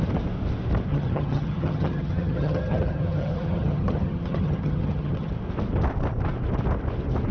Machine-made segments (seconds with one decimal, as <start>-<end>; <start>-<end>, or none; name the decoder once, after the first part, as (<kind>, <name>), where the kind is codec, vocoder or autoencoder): 0.9-5.3 (vocoder, HiFi-GAN)